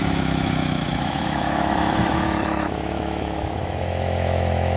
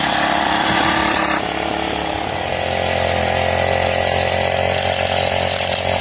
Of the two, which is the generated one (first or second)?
first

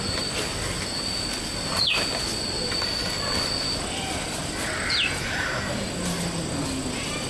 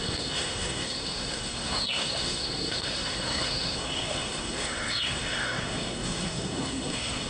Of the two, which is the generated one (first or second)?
second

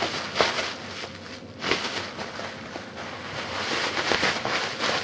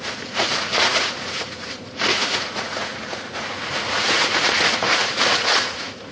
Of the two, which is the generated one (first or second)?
second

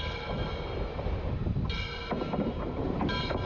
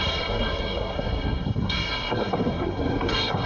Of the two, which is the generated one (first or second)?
second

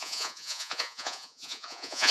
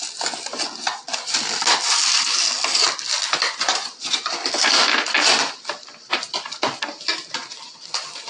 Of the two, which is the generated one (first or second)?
first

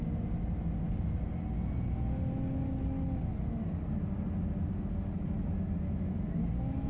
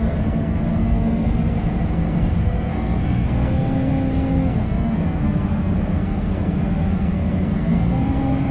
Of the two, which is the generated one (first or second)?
second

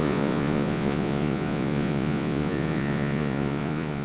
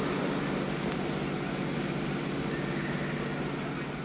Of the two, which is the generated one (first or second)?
first